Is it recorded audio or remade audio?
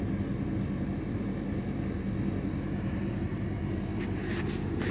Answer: recorded